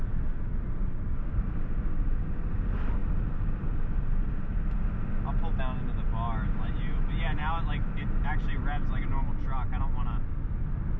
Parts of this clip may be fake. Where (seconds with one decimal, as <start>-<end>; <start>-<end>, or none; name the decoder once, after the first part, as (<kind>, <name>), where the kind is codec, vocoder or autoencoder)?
none